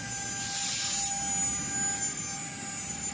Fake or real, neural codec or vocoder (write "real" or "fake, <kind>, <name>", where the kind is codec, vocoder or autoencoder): real